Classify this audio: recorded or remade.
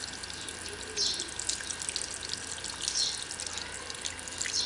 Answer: recorded